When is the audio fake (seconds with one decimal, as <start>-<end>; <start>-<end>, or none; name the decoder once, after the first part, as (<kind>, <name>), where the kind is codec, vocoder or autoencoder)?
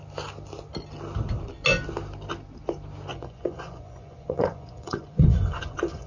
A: 3.1-6.1 (vocoder, Vocos)